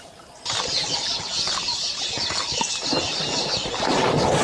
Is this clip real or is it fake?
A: real